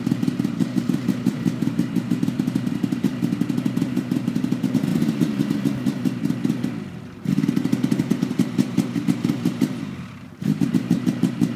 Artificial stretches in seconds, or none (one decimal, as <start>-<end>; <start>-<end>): 0.0-3.1; 3.9-4.9; 7.0-11.6